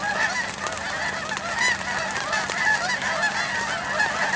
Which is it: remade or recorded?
recorded